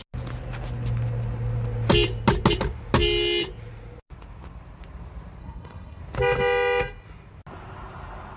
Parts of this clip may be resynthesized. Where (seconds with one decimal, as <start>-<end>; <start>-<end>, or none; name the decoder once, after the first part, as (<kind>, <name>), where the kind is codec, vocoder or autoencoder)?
5.4-6.0 (codec, SNAC)